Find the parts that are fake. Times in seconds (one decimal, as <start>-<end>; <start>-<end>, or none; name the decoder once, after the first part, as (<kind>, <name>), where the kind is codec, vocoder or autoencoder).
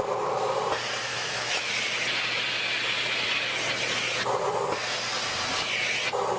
1.1-1.7 (autoencoder, DAC-VAE)